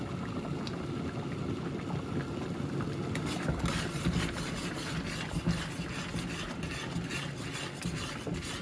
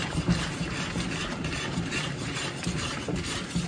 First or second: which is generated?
second